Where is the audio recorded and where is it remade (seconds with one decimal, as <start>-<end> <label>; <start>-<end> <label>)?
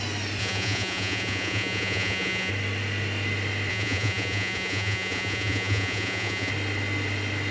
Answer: 0.0-0.4 recorded; 0.4-2.5 remade; 2.5-3.7 recorded; 3.7-6.5 remade; 6.5-7.5 recorded